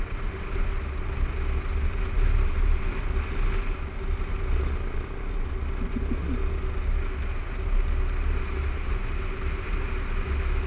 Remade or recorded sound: recorded